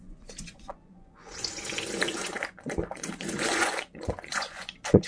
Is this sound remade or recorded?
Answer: remade